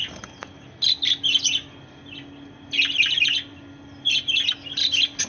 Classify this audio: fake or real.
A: real